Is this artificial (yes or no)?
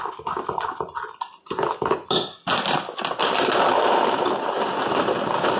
no